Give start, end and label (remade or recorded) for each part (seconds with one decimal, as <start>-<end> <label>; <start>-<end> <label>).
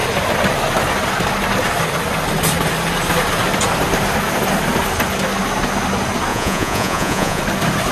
0.0-6.3 recorded; 6.3-7.4 remade; 7.4-7.9 recorded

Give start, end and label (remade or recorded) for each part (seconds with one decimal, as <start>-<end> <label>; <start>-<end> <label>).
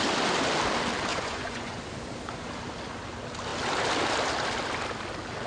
0.0-1.1 recorded; 1.1-1.8 remade; 1.8-5.5 recorded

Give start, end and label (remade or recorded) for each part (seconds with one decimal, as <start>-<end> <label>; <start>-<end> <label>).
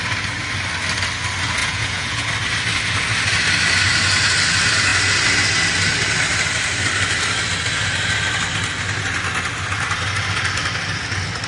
0.0-1.6 recorded; 1.6-2.3 remade; 2.3-11.5 recorded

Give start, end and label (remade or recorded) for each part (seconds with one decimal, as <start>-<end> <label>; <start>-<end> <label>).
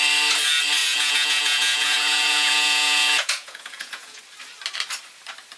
0.0-0.8 recorded; 0.8-4.2 remade; 4.2-5.6 recorded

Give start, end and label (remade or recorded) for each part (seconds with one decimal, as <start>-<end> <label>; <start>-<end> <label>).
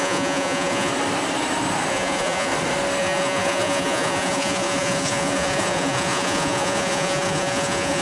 0.0-0.9 remade; 0.9-1.9 recorded; 1.9-2.5 remade; 2.5-3.0 recorded; 3.0-8.0 remade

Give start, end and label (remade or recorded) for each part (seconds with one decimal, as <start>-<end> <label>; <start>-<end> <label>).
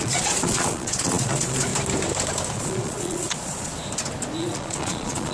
0.0-1.7 remade; 1.7-2.5 recorded; 2.5-3.7 remade; 3.7-4.4 recorded; 4.4-5.3 remade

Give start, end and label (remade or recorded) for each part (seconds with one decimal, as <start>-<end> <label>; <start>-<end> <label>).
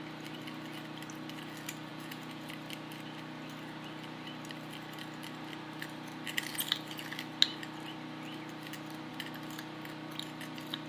0.0-1.9 recorded; 1.9-2.5 remade; 2.5-10.9 recorded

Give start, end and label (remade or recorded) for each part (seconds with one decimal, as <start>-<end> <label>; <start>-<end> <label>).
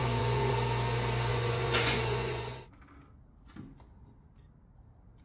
0.0-0.5 remade; 0.5-1.3 recorded; 1.3-2.6 remade; 2.6-5.2 recorded